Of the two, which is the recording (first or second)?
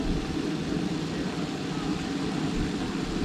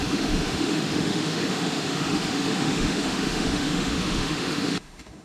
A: first